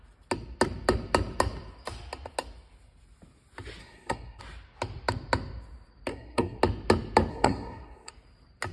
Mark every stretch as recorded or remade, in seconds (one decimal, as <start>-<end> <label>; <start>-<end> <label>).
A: 0.0-3.8 recorded; 3.8-4.4 remade; 4.4-6.1 recorded; 6.1-6.6 remade; 6.6-7.3 recorded; 7.3-8.1 remade; 8.1-8.7 recorded